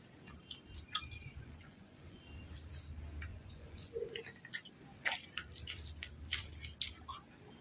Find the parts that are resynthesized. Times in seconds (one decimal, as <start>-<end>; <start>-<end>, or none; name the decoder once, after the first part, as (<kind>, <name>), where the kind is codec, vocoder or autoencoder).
1.2-2.2 (vocoder, Vocos); 3.3-3.9